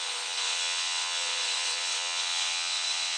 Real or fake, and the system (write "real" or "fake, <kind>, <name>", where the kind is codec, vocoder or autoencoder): fake, vocoder, WaveNeXt